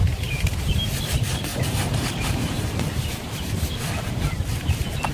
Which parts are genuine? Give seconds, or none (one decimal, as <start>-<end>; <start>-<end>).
none